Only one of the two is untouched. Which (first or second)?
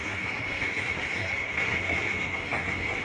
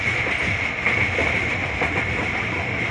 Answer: second